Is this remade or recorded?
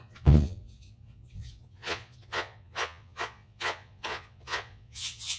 remade